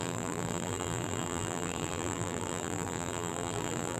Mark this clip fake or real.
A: fake